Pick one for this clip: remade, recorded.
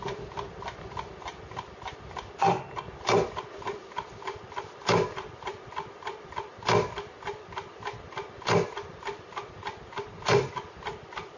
recorded